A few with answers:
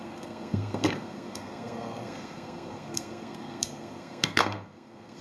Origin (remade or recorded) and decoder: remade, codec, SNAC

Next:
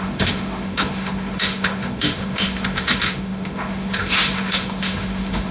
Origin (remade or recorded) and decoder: remade, autoencoder, DAC-VAE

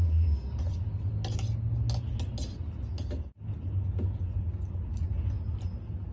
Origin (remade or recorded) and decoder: recorded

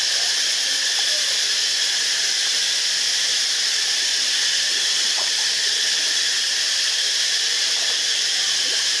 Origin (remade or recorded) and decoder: recorded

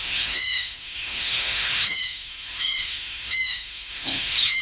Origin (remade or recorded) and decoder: remade, autoencoder, DAC-VAE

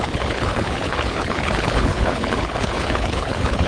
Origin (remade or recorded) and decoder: remade, codec, HILCodec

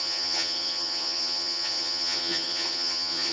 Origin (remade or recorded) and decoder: remade, vocoder, HiFi-GAN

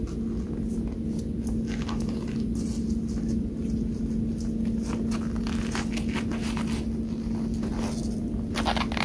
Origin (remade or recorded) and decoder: recorded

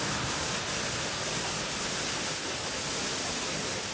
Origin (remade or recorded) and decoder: recorded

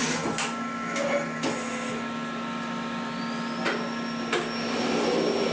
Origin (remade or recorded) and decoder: recorded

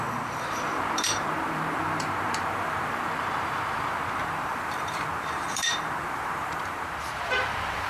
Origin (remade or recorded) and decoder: remade, vocoder, BigVGAN v2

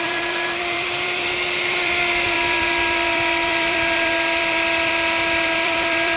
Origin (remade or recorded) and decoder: remade, vocoder, BigVGAN v2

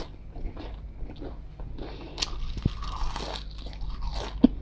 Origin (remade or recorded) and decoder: recorded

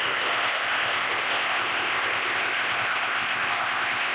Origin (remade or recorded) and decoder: remade, codec, ZipCodec